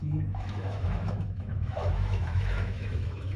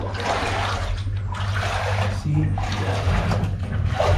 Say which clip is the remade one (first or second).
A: first